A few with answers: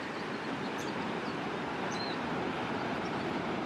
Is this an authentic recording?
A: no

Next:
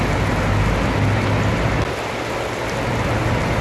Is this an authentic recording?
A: yes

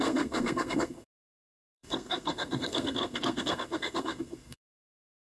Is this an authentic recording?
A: no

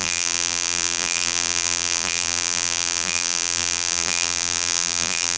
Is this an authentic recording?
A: no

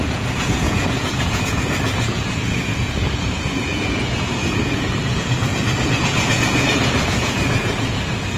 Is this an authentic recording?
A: no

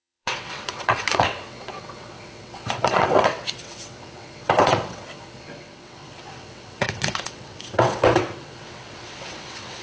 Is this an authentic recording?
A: no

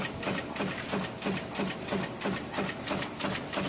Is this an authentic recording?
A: yes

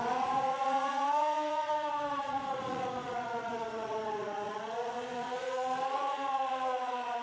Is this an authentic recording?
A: no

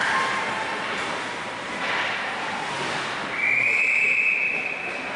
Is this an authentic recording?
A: yes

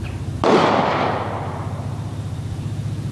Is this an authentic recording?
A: yes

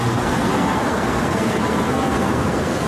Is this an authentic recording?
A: no